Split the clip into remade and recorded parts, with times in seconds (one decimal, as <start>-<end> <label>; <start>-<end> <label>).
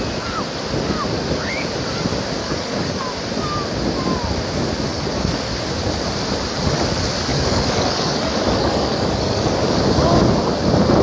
0.0-2.4 recorded; 2.4-3.0 remade; 3.0-4.9 recorded; 4.9-5.5 remade; 5.5-7.3 recorded; 7.3-9.8 remade; 9.8-11.0 recorded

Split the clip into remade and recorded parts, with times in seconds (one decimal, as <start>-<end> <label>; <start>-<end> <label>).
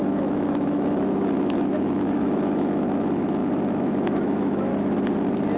0.0-4.7 remade; 4.7-5.6 recorded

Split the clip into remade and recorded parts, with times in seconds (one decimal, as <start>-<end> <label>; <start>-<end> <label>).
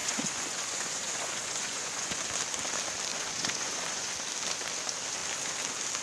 0.0-2.2 remade; 2.2-3.1 recorded; 3.1-4.1 remade; 4.1-6.0 recorded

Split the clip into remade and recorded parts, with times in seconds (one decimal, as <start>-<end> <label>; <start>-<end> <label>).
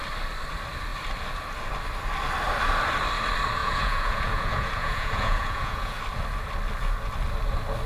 0.0-3.6 recorded; 3.6-6.0 remade; 6.0-7.9 recorded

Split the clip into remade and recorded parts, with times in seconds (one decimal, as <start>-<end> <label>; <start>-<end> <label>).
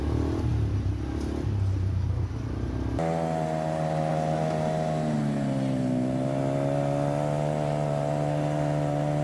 0.0-9.2 recorded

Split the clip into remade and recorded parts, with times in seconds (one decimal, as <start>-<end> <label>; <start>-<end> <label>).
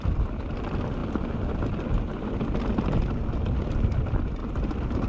0.0-1.0 remade; 1.0-3.7 recorded; 3.7-4.4 remade; 4.4-5.1 recorded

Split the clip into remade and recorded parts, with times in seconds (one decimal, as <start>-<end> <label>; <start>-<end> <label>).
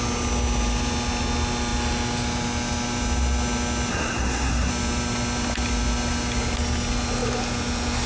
0.0-3.9 recorded; 3.9-4.7 remade; 4.7-8.1 recorded